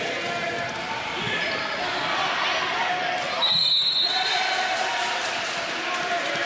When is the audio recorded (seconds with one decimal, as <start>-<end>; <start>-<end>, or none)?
0.0-6.5